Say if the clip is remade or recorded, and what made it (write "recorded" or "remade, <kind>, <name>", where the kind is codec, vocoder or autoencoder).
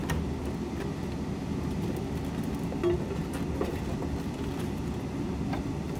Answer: recorded